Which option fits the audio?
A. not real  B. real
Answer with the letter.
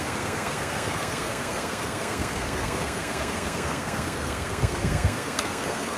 A